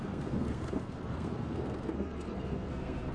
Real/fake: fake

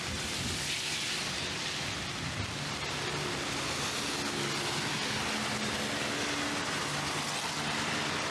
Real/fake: real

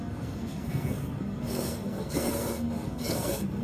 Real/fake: fake